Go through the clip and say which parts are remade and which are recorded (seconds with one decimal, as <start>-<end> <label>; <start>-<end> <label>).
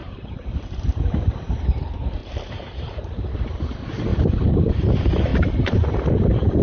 0.0-0.8 remade; 0.8-2.2 recorded; 2.2-3.6 remade; 3.6-4.1 recorded; 4.1-4.7 remade; 4.7-5.3 recorded; 5.3-6.1 remade; 6.1-6.6 recorded